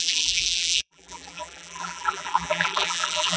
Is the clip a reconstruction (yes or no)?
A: yes